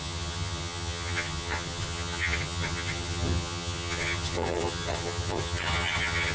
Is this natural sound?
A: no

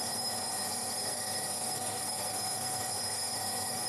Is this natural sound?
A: no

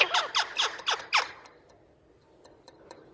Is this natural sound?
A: yes